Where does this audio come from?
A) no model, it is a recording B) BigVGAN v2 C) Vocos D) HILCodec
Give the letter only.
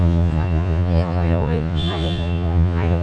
C